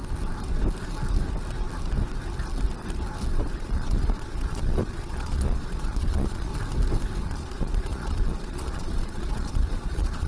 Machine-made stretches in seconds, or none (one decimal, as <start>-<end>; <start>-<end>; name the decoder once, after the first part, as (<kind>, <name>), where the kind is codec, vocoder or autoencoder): 3.5-6.5 (vocoder, Vocos); 7.2-10.3